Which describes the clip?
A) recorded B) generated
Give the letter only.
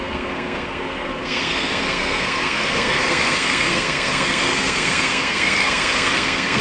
B